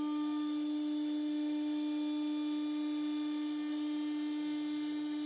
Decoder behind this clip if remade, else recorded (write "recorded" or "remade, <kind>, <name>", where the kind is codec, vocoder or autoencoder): recorded